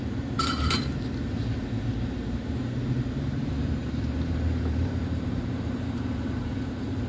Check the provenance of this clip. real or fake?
fake